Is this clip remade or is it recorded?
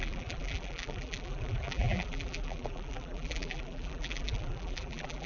remade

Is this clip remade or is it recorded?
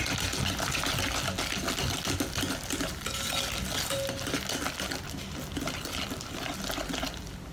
recorded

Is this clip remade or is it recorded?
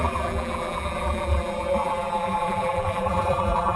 remade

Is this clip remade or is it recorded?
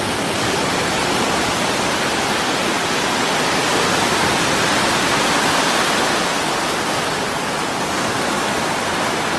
remade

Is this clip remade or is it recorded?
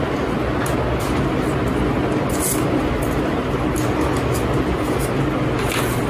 recorded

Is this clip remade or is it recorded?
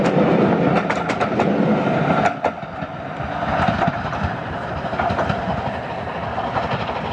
recorded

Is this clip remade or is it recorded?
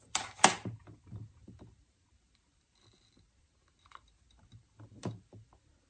remade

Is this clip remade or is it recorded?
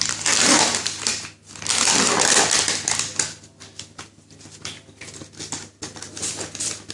recorded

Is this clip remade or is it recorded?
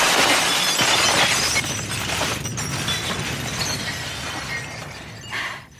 remade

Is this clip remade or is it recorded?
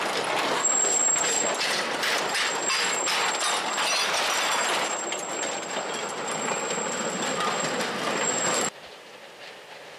recorded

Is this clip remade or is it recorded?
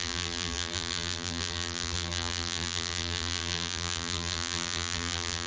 remade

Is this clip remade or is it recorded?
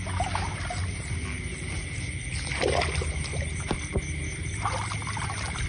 recorded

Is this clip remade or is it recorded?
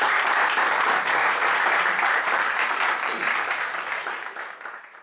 remade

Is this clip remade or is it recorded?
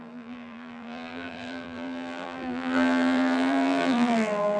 remade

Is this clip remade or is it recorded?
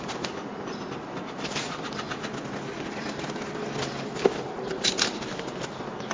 recorded